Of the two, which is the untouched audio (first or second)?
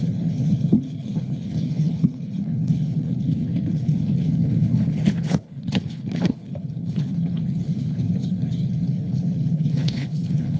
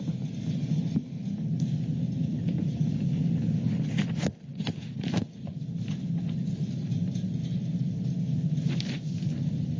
second